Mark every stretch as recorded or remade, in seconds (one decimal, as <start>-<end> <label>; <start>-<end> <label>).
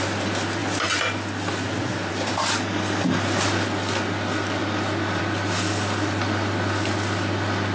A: 0.0-7.7 recorded